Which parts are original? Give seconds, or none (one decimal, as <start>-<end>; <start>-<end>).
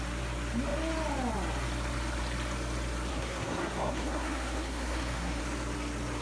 0.0-3.1; 5.4-6.2